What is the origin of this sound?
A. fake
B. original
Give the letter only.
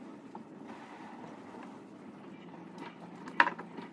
B